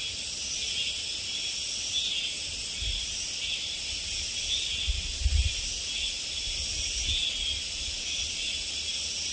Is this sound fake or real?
real